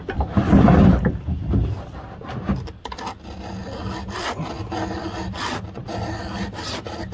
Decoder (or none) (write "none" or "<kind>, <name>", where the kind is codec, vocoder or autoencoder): none